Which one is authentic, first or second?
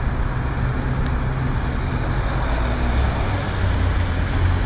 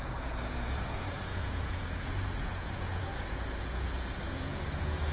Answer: first